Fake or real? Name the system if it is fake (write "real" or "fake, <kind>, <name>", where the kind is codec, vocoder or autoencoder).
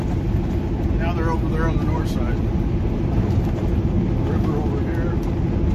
real